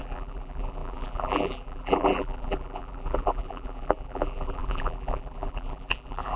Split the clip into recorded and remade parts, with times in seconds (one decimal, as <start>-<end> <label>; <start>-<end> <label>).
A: 0.0-6.4 remade